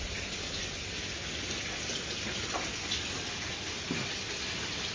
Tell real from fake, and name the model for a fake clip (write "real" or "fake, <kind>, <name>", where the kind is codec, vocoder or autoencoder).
real